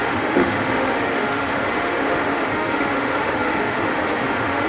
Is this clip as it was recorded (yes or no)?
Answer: no